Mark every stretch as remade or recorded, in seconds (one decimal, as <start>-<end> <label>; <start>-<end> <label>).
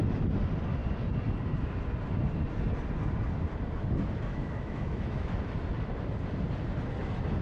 0.0-4.3 recorded; 4.3-5.4 remade; 5.4-7.4 recorded